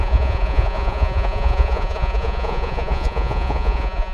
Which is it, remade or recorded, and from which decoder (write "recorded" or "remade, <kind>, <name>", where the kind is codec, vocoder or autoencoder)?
remade, vocoder, Vocos